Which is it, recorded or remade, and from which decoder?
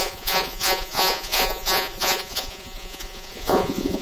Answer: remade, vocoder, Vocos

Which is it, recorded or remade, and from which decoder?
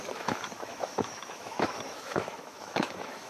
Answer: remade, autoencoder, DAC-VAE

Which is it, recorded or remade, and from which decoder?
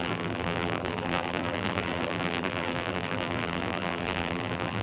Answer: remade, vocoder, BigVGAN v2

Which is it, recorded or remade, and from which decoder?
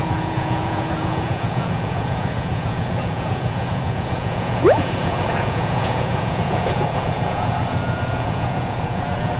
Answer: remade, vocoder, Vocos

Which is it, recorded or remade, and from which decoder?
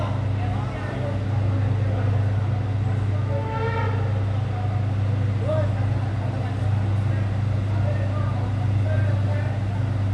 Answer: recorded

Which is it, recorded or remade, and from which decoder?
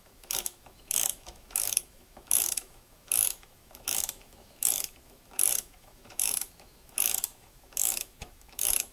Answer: remade, autoencoder, DAC-VAE